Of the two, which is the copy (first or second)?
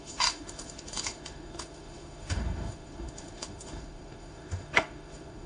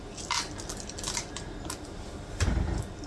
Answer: first